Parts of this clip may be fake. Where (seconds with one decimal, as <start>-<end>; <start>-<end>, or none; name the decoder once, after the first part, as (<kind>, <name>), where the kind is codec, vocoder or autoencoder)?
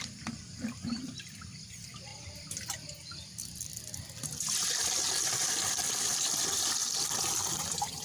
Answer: 0.0-2.1 (vocoder, BigVGAN v2); 5.2-8.0